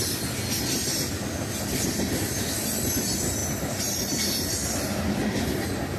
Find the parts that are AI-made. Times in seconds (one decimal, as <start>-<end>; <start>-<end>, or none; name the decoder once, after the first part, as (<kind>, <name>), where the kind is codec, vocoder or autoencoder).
none